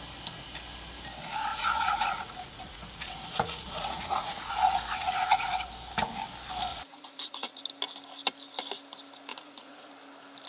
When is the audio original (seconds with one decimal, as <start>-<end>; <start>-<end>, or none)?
0.0-1.5; 5.7-6.7; 7.6-9.3; 9.9-10.5